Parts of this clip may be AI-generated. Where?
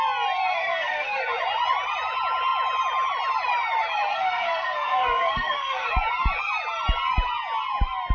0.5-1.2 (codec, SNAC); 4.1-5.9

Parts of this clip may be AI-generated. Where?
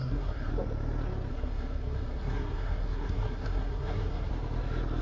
0.0-0.5 (codec, SNAC); 1.3-4.3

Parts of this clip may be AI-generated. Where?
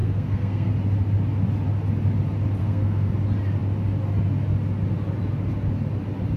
0.0-0.7 (codec, SNAC); 2.6-3.1